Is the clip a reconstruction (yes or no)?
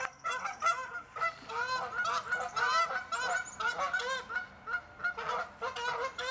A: no